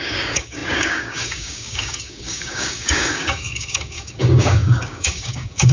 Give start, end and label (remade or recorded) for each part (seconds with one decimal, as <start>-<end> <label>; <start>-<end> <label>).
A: 0.0-5.7 remade